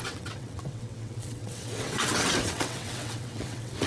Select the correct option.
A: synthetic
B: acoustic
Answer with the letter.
A